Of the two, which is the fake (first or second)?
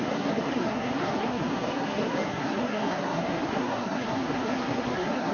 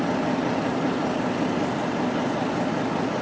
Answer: first